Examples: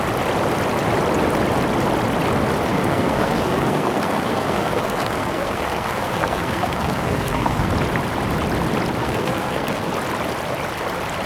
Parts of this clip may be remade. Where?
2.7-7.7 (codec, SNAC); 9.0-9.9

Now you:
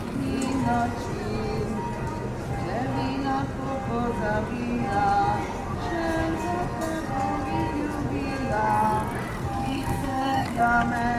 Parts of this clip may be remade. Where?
9.3-10.6 (codec, SNAC)